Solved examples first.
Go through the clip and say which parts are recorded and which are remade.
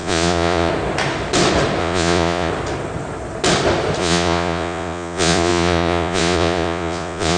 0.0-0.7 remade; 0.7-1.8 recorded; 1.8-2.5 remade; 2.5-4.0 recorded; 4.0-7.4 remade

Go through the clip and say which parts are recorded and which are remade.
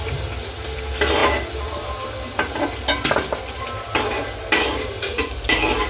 0.0-5.9 recorded